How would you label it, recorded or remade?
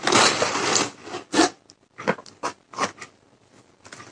recorded